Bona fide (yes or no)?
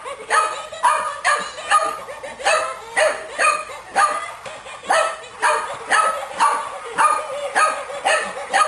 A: yes